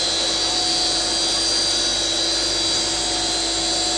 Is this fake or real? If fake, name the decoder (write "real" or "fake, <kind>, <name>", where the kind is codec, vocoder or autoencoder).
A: real